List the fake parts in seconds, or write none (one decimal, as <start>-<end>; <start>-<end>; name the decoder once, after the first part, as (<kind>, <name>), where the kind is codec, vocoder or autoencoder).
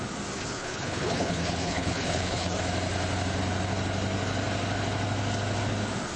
0.4-2.6 (codec, HILCodec)